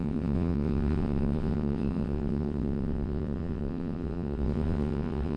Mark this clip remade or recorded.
remade